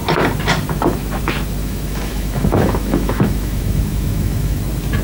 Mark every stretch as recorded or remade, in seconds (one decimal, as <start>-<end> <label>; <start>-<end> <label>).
0.0-1.6 recorded; 1.6-4.6 remade; 4.6-5.0 recorded